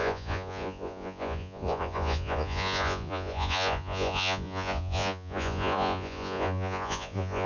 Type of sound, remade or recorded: remade